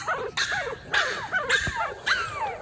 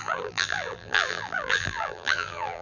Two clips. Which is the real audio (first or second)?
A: first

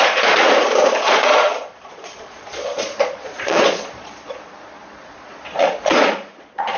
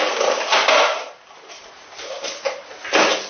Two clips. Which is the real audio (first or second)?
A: second